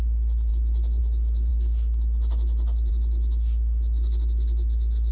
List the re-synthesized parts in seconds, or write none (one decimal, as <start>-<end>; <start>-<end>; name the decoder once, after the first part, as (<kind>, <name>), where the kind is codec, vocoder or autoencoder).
none